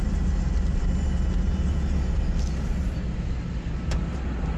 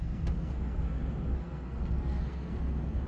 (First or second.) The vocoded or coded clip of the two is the second